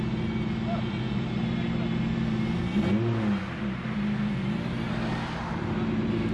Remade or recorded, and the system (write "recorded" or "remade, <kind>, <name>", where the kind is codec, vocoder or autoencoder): recorded